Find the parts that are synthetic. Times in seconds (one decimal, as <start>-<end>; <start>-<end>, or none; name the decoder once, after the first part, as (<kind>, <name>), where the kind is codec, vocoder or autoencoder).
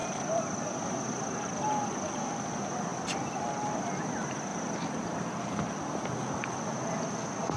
none